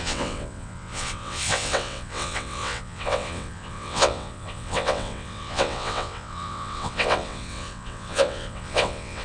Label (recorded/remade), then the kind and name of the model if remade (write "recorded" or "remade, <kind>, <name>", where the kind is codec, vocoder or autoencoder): remade, vocoder, WaveNeXt